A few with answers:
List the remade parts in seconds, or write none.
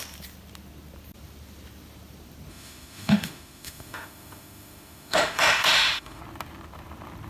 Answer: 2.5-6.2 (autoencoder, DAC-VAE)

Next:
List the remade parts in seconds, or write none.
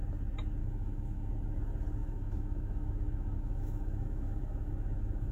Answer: 0.6-1.3 (autoencoder, DAC-VAE); 2.0-5.3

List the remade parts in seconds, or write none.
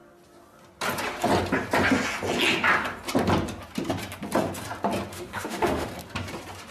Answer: 5.1-5.9 (autoencoder, DAC-VAE)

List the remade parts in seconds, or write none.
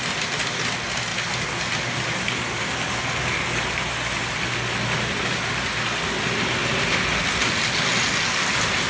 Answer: none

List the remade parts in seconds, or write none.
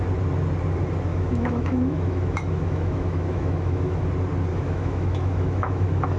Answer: 1.1-4.0 (autoencoder, DAC-VAE); 4.5-6.2